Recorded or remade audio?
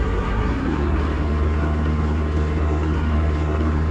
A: remade